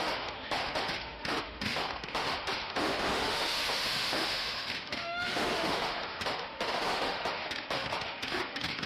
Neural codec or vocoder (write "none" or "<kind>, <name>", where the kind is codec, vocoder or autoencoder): autoencoder, DAC-VAE